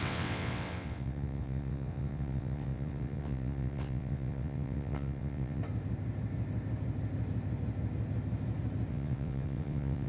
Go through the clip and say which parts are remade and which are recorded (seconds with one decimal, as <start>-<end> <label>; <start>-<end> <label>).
0.0-5.6 remade; 5.6-8.9 recorded; 8.9-10.1 remade